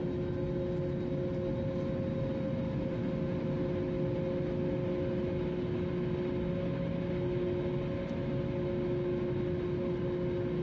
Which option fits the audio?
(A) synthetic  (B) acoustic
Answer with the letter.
B